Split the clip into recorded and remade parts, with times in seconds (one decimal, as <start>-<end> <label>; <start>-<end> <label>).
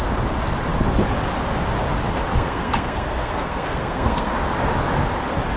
0.0-2.3 recorded; 2.3-4.3 remade; 4.3-5.6 recorded